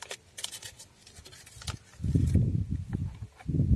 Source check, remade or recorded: recorded